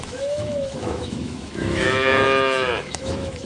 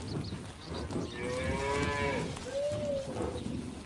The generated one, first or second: first